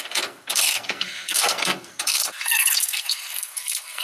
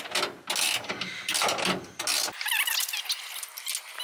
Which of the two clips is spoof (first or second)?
first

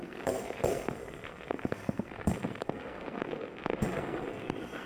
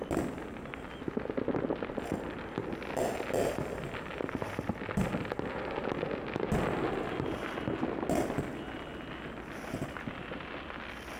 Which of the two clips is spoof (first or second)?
first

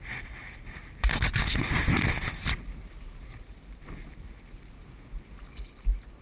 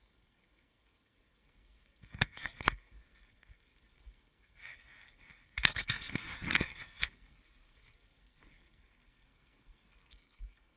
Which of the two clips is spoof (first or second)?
second